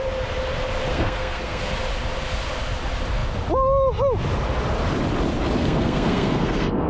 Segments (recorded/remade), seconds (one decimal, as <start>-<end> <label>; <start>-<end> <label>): 0.0-0.9 recorded; 0.9-1.6 remade; 1.6-5.6 recorded; 5.6-6.9 remade